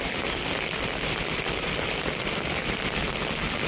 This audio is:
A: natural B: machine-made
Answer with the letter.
A